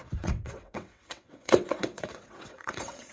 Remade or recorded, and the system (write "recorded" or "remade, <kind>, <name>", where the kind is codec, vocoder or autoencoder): remade, vocoder, WaveNeXt